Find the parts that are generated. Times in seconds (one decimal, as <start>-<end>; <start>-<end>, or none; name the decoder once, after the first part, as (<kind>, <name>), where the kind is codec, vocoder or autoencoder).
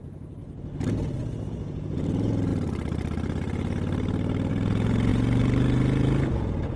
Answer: 0.0-0.4 (vocoder, Vocos); 1.5-2.5; 4.5-6.8